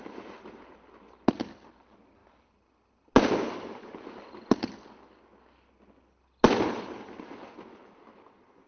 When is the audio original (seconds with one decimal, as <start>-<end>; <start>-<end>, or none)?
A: 0.0-8.7